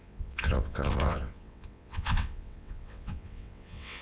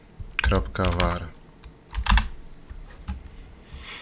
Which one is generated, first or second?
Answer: first